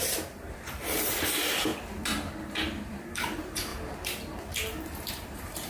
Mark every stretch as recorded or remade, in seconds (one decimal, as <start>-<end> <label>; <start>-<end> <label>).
0.0-1.7 remade; 1.7-2.9 recorded; 2.9-3.7 remade; 3.7-5.1 recorded; 5.1-5.7 remade